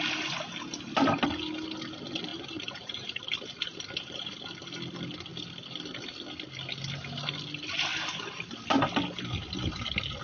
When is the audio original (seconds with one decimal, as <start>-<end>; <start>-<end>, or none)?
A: 0.0-2.3; 4.4-7.9; 8.5-10.2